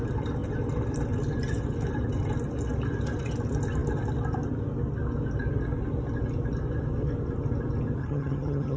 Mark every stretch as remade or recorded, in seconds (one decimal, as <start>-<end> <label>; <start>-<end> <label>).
0.0-8.0 recorded; 8.0-8.8 remade